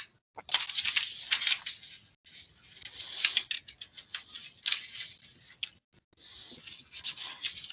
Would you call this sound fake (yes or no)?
no